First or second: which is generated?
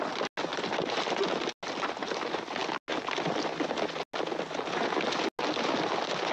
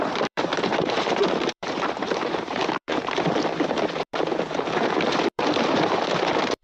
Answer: second